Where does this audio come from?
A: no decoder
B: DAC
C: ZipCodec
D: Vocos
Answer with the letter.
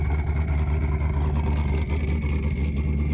A